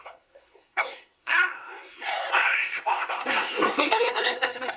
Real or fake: fake